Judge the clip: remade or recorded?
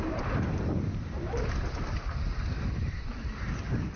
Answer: remade